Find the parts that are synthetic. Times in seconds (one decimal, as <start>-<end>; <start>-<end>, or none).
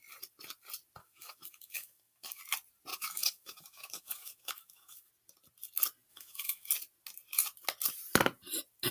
1.0-2.4; 2.9-5.1; 6.1-6.7